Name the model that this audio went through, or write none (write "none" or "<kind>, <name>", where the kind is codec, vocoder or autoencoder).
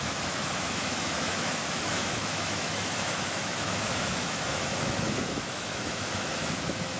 autoencoder, DAC-VAE